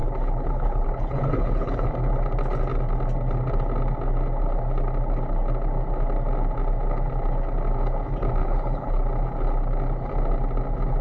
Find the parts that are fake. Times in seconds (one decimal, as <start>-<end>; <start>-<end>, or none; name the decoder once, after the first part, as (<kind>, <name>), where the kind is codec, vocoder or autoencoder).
0.0-1.9 (codec, HILCodec); 8.4-9.0